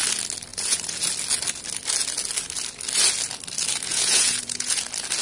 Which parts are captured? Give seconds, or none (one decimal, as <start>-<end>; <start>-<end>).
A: 0.0-0.5; 1.0-3.9; 4.8-5.2